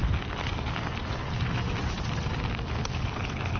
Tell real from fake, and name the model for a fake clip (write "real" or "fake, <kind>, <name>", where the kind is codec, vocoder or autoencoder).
real